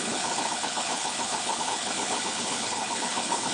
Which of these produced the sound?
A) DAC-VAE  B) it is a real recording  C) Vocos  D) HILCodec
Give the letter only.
D